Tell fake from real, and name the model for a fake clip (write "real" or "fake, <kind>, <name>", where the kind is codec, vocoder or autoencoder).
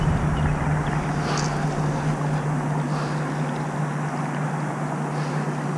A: real